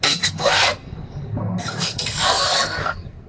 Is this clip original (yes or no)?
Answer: no